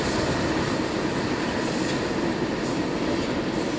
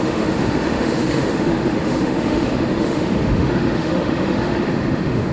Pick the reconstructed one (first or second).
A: second